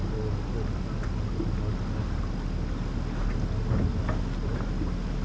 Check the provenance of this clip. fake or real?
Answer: real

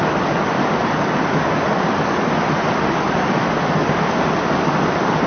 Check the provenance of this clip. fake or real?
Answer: fake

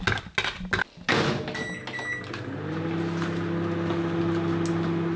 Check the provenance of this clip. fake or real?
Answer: real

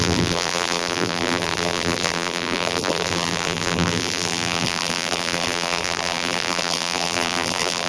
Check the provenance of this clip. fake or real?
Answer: fake